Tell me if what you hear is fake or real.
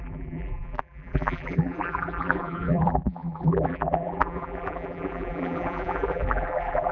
fake